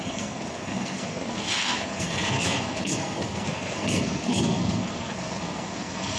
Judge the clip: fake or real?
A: fake